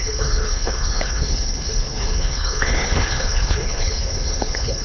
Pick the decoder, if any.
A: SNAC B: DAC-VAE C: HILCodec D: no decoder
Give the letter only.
C